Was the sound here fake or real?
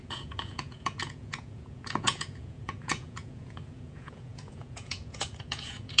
fake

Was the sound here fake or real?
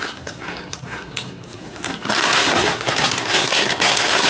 fake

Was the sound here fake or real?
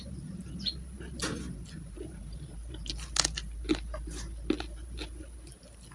real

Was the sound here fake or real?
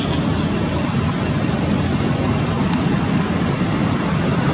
real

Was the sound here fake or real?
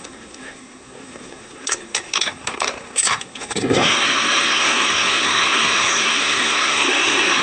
fake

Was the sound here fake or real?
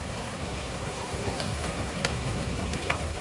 fake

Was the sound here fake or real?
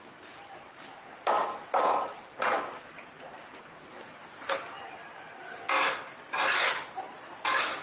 real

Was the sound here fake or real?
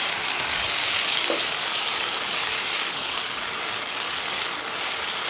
fake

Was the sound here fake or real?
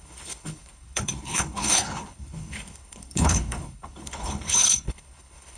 fake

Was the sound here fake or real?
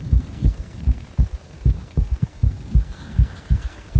fake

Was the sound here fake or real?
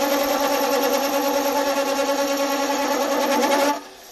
real